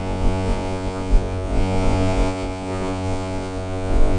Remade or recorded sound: remade